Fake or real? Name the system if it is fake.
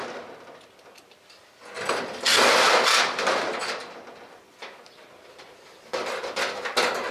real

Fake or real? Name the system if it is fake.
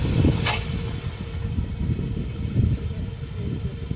real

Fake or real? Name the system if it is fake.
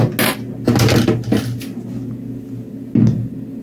real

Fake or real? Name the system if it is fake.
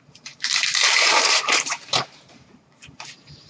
fake, vocoder, BigVGAN v2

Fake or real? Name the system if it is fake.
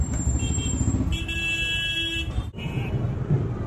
real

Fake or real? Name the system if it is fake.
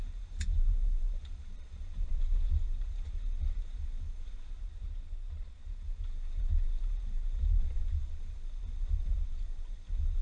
fake, vocoder, BigVGAN v2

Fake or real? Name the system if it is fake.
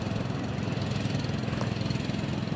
real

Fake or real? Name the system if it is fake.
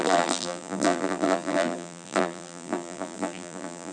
fake, vocoder, BigVGAN v2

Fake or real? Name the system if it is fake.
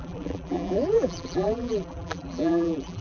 fake, vocoder, BigVGAN v2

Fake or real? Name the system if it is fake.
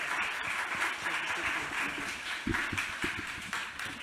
real